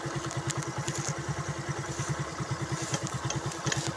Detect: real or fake real